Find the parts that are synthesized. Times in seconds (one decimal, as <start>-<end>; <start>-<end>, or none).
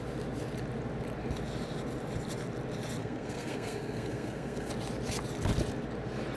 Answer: 3.0-4.7